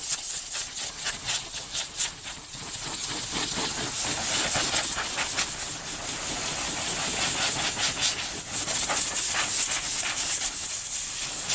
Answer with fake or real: real